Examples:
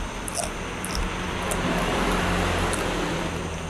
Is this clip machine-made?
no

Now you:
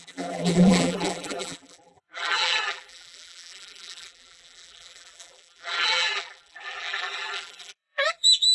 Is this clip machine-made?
yes